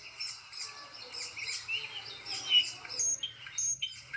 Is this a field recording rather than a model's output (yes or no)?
yes